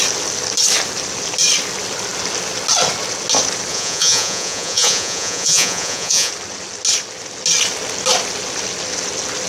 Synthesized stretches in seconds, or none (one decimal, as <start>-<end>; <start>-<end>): 3.7-6.3